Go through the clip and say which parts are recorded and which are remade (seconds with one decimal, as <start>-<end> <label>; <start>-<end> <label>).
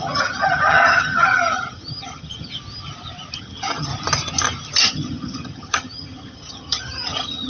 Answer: 0.0-2.5 remade; 2.5-3.4 recorded; 3.4-3.9 remade; 3.9-4.8 recorded; 4.8-7.5 remade